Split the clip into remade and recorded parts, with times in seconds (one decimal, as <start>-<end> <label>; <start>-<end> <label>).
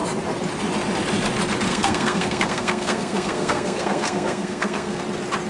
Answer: 0.0-1.7 recorded; 1.7-5.0 remade; 5.0-5.5 recorded